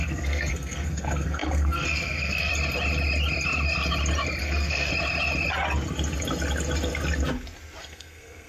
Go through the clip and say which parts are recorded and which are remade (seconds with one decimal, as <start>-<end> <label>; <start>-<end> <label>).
0.0-2.5 remade; 2.5-4.4 recorded; 4.4-4.9 remade; 4.9-7.8 recorded; 7.8-8.5 remade